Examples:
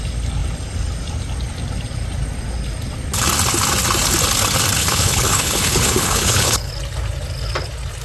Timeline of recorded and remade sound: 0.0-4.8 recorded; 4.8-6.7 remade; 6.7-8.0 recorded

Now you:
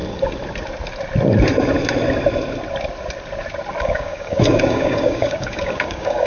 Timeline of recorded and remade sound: 0.0-3.8 recorded; 3.8-6.3 remade

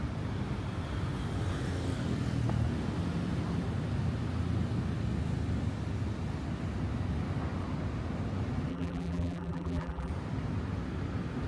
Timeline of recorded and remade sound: 0.0-8.7 recorded; 8.7-10.1 remade; 10.1-11.5 recorded